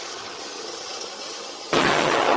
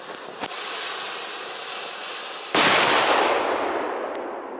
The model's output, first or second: first